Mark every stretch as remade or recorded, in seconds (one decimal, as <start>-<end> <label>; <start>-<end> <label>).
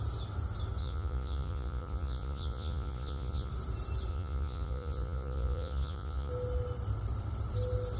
0.0-0.8 recorded; 0.8-3.5 remade; 3.5-4.1 recorded; 4.1-6.3 remade; 6.3-8.0 recorded